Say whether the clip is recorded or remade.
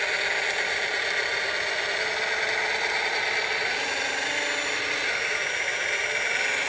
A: recorded